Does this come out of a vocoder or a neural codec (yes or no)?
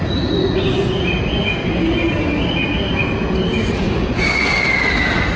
no